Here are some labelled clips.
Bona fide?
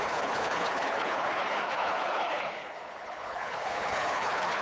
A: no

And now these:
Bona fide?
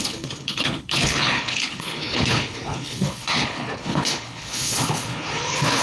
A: no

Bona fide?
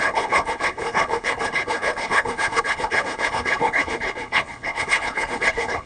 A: no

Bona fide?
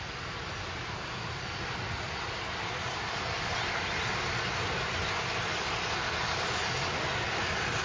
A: yes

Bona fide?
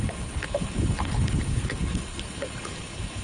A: no